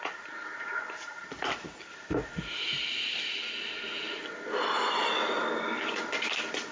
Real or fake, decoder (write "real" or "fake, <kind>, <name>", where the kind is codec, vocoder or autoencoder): real